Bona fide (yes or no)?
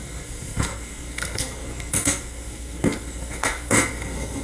no